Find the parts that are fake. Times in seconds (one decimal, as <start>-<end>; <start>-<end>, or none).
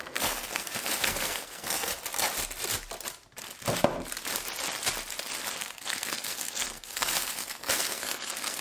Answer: 0.0-1.9; 5.5-8.6